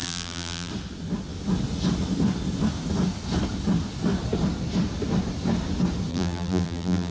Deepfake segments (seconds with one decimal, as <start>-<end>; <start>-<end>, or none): 0.0-0.7; 6.1-7.1